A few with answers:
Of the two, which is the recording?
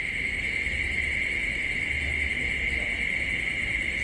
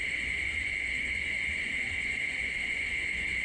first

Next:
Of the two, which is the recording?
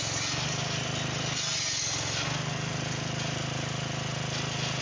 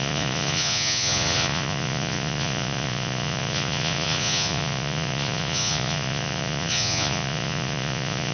first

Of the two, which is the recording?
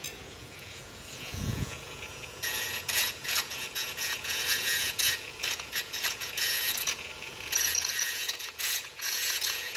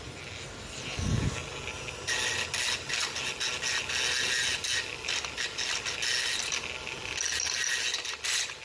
second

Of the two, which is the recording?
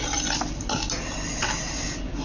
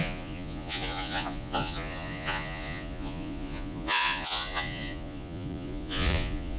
first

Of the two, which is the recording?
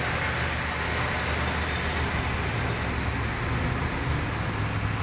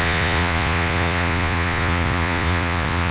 first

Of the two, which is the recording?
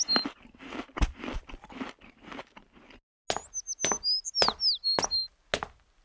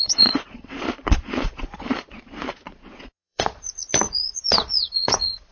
first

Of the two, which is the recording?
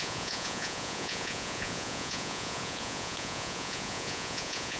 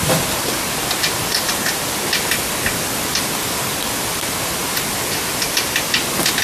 second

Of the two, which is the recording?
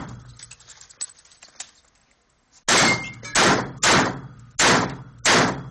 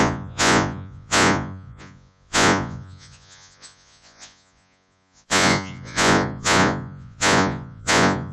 first